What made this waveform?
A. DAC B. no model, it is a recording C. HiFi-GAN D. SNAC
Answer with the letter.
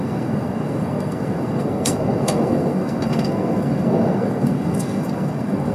D